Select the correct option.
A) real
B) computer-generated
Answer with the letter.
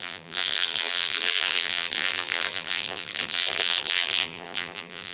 B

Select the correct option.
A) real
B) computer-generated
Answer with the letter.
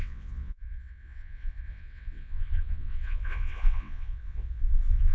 B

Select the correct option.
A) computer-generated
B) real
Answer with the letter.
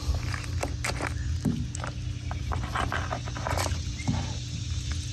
B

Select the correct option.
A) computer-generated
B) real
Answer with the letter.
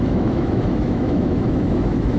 A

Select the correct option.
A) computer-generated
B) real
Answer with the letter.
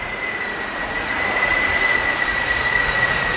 A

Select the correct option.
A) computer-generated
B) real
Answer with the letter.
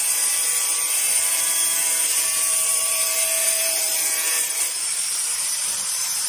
A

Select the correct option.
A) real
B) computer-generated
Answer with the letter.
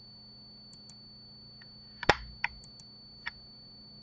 A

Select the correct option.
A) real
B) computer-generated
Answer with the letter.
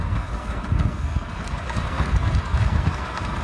B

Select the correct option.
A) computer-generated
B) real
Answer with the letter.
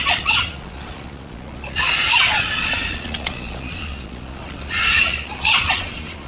A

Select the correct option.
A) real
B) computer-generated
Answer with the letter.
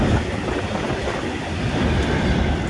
A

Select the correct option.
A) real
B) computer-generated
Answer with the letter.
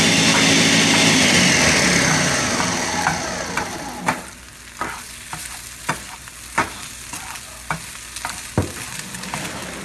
A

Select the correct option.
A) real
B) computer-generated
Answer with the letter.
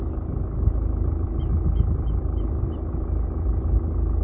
A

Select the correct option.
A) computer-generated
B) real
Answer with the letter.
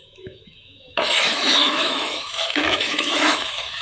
A